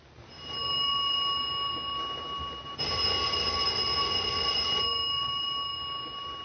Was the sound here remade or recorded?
recorded